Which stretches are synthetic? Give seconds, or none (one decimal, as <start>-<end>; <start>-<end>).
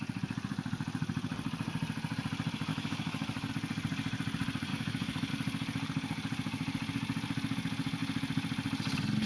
2.7-3.5; 4.7-5.3